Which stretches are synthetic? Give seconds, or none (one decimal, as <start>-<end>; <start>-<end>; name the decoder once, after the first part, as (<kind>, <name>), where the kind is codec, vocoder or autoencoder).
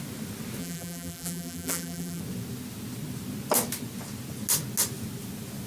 0.6-2.2 (vocoder, BigVGAN v2)